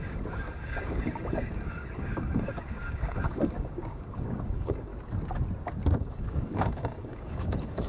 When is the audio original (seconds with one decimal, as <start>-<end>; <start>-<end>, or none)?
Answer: 4.9-6.0